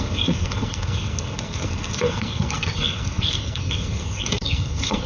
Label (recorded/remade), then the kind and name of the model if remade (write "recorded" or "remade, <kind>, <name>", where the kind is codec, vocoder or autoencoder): remade, codec, SNAC